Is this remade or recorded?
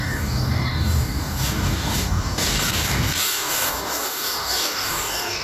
remade